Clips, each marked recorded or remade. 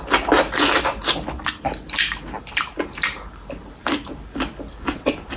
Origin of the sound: recorded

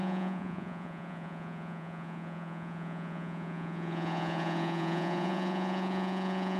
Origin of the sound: remade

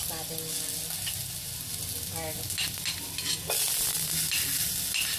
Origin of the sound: recorded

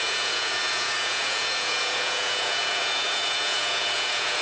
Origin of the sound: remade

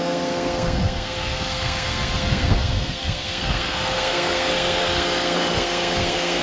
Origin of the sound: remade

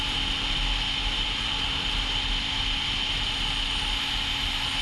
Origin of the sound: recorded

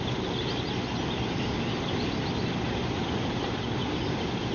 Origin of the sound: recorded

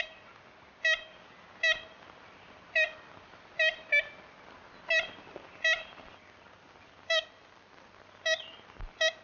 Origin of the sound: recorded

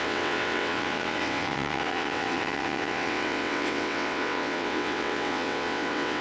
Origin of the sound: remade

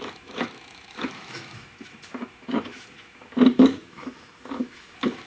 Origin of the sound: remade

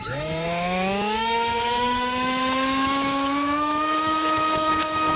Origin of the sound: remade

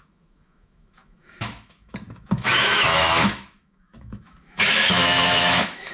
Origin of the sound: remade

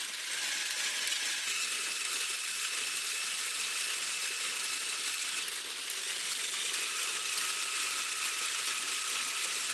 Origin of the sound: recorded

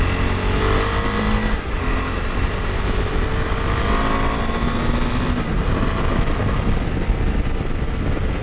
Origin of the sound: recorded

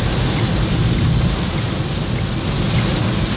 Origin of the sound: recorded